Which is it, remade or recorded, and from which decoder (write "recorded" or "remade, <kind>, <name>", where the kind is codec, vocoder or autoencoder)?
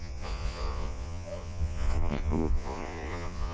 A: remade, vocoder, Vocos